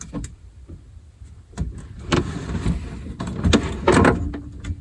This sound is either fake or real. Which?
real